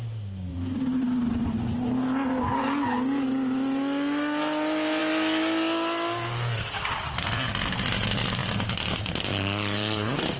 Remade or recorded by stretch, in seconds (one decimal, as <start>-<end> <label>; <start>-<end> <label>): 0.0-0.5 recorded; 0.5-1.6 remade; 1.6-8.4 recorded; 8.4-10.4 remade